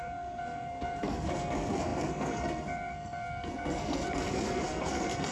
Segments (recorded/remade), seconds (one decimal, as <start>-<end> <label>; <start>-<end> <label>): 0.0-5.3 remade